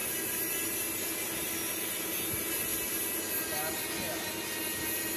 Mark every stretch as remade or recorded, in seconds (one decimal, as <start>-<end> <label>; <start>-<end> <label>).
0.0-5.2 recorded